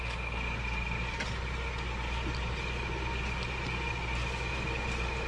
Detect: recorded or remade recorded